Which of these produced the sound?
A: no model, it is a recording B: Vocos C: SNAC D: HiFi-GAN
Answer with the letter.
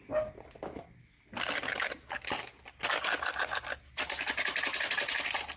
A